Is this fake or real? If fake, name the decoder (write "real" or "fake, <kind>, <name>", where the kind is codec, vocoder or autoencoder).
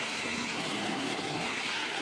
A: fake, codec, SNAC